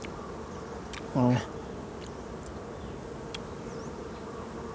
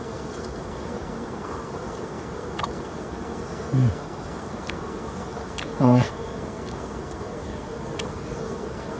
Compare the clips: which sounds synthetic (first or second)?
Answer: second